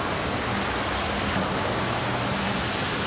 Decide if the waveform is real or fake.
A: real